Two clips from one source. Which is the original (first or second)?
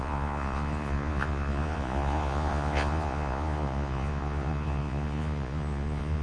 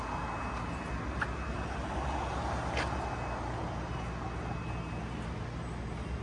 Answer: second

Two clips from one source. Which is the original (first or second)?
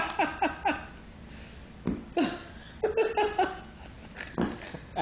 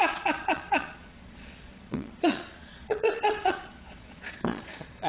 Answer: first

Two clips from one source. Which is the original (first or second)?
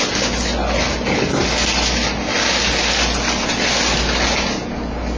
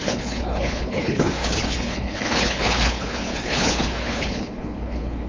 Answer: first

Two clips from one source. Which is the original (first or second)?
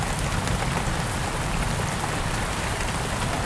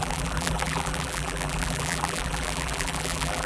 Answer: first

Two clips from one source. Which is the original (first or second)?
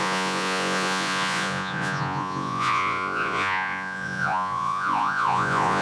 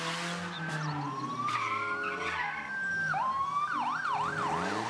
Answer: second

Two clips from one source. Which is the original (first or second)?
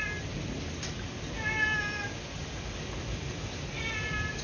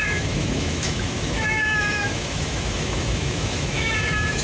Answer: first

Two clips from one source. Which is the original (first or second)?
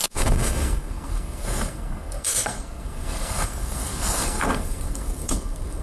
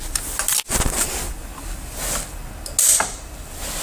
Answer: second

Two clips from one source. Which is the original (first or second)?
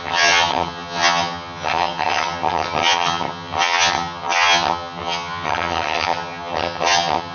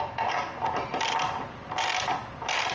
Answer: second